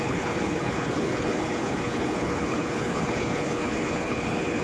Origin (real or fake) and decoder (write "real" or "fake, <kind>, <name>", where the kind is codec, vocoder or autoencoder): fake, codec, HILCodec